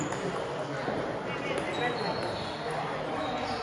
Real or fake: fake